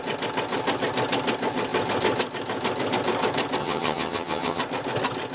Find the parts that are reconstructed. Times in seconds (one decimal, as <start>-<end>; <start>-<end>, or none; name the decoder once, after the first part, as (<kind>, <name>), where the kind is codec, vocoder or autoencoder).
3.6-4.6 (vocoder, HiFi-GAN)